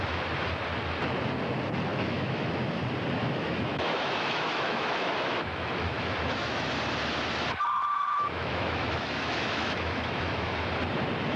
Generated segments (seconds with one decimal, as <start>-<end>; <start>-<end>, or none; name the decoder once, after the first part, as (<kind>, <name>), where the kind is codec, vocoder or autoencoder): 1.9-2.5 (autoencoder, DAC-VAE); 3.2-6.7; 7.9-10.5